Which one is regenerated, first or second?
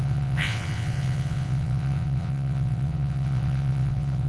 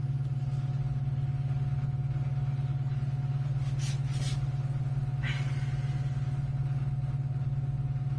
first